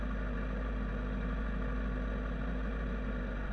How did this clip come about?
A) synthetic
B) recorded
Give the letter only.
B